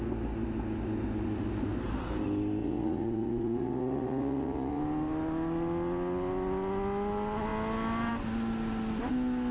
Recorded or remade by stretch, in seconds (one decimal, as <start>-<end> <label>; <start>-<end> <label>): 0.0-2.6 recorded; 2.6-4.8 remade; 4.8-9.5 recorded